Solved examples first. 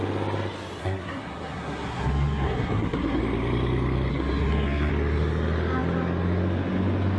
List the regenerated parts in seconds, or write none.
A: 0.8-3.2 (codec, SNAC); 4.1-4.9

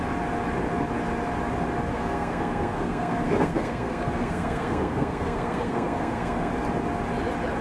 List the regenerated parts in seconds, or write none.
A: 1.9-6.5 (codec, SNAC)

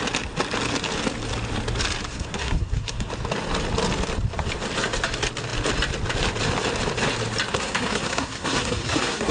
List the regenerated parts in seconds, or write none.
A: 2.1-3.1 (codec, SNAC); 7.5-9.3

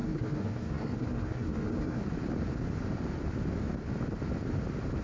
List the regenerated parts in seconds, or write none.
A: 0.0-2.0 (codec, SNAC)

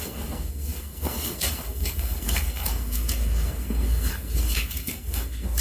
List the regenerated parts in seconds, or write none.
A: 0.0-5.6 (codec, SNAC)